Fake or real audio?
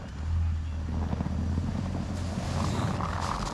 real